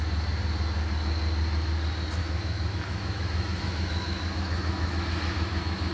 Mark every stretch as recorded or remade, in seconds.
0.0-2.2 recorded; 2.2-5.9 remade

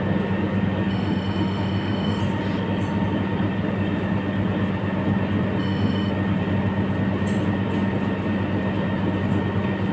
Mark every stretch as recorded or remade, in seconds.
0.0-0.9 recorded; 0.9-2.2 remade; 2.2-5.6 recorded; 5.6-6.1 remade; 6.1-9.9 recorded

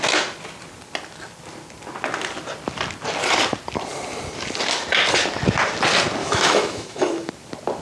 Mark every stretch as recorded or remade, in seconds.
0.0-6.2 recorded; 6.2-7.3 remade; 7.3-7.8 recorded